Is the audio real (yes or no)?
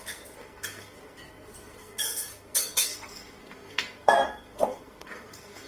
no